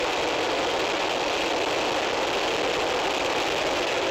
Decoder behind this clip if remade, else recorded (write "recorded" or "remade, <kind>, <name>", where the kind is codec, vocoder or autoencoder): recorded